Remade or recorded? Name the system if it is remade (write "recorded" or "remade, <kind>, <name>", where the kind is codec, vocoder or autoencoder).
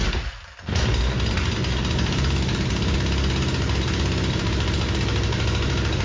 recorded